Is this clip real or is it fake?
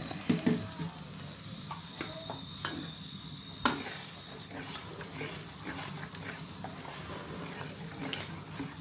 real